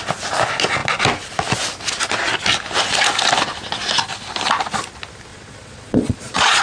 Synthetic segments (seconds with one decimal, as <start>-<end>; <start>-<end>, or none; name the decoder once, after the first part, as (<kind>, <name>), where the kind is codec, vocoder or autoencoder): 5.3-6.6 (vocoder, Vocos)